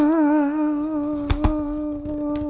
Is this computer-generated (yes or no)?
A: no